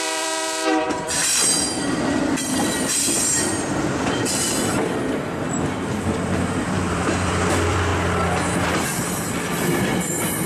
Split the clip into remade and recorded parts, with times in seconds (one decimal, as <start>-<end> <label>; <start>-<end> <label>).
0.0-3.5 remade; 3.5-6.0 recorded; 6.0-7.9 remade; 7.9-8.7 recorded; 8.7-10.5 remade